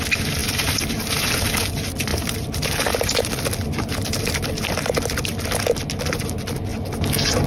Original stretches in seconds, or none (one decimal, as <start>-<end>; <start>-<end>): 0.0-0.4; 1.3-2.1; 5.8-7.5